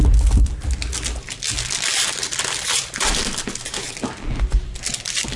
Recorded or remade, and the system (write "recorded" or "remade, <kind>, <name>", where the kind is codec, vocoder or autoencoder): recorded